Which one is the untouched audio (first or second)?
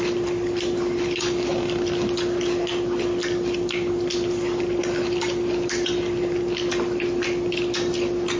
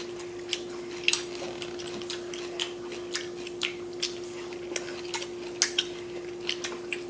second